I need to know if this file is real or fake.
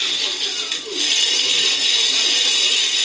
real